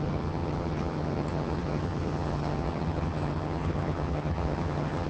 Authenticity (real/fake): fake